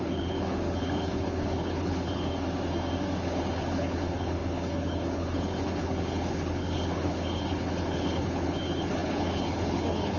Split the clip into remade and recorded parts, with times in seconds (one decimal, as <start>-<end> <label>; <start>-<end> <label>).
0.0-2.3 remade; 2.3-3.2 recorded; 3.2-10.2 remade